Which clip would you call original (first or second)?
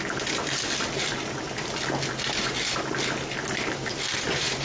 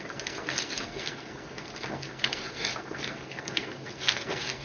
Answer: first